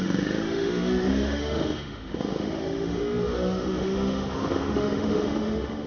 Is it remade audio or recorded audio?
remade